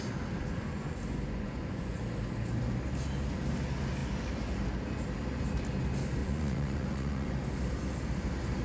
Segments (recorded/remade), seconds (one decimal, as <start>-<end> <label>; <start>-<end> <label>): 0.0-0.4 recorded; 0.4-2.0 remade; 2.0-6.2 recorded; 6.2-7.3 remade; 7.3-8.6 recorded